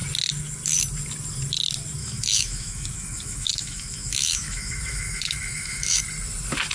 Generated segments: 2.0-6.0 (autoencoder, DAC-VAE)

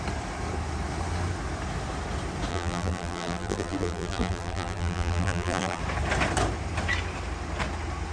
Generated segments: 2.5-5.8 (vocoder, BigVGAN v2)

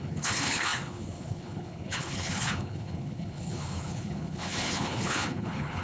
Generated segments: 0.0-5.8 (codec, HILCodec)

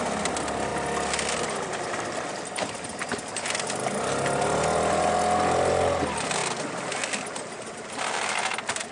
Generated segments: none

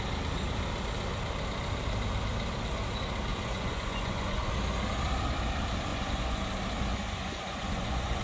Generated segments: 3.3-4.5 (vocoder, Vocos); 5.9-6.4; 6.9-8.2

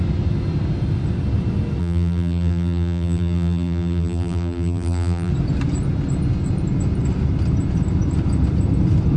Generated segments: 1.8-5.3 (vocoder, BigVGAN v2)